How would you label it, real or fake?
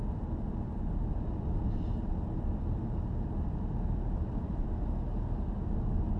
real